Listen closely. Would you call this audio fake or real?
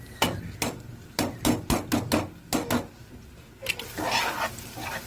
real